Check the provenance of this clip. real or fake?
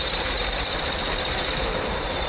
fake